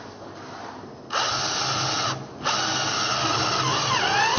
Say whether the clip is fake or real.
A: real